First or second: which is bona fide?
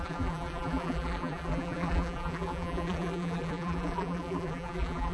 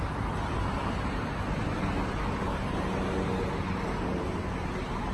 second